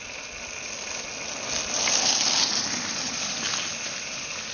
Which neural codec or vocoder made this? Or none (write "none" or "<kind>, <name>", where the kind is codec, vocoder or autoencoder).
none